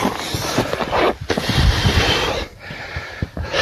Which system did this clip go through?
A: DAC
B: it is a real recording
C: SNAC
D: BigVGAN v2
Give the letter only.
B